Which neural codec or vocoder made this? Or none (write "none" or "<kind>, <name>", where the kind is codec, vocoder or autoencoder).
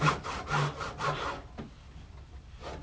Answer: none